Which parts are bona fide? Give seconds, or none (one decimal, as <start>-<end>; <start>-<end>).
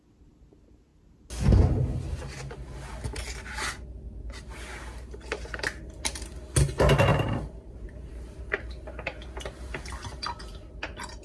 0.0-7.1; 8.4-11.2